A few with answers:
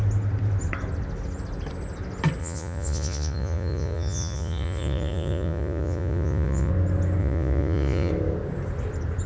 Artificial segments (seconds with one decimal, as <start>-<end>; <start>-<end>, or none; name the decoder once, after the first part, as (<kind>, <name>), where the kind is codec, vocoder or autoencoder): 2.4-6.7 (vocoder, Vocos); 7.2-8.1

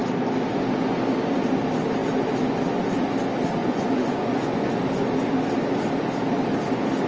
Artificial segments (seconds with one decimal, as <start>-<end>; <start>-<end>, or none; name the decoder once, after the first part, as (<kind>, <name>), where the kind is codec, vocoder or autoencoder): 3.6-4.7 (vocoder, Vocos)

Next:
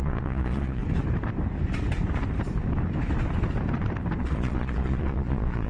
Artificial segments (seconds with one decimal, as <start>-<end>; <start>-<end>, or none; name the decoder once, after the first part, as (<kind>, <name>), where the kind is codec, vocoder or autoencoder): 0.0-0.8 (vocoder, Vocos); 4.2-5.7

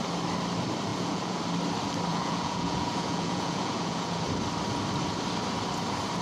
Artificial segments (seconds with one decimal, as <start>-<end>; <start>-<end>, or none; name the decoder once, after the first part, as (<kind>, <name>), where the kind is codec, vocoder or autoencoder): 0.9-1.4 (vocoder, Vocos); 2.1-4.2

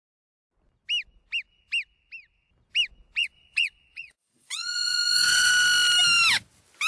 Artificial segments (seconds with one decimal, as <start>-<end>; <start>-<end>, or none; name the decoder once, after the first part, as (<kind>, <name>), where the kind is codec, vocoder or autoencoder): 3.2-5.5 (vocoder, Vocos)

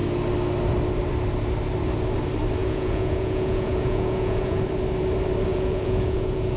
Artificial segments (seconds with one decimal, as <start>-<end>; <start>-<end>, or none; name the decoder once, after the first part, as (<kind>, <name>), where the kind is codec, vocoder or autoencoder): 2.6-4.6 (vocoder, Vocos); 5.5-6.6

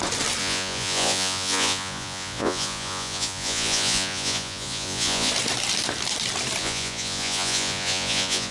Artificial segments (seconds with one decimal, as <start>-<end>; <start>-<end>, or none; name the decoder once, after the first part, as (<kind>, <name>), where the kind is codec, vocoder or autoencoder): 0.4-5.3 (vocoder, Vocos); 6.6-8.5